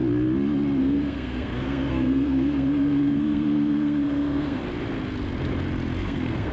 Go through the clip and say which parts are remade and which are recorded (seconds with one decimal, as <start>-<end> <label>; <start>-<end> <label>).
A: 0.0-0.8 recorded; 0.8-4.6 remade; 4.6-6.0 recorded; 6.0-6.5 remade